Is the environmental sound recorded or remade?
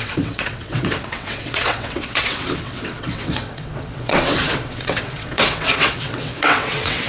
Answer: remade